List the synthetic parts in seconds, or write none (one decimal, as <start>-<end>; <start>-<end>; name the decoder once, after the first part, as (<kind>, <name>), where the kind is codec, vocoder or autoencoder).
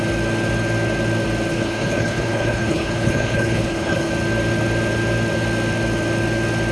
1.5-4.1 (codec, HILCodec)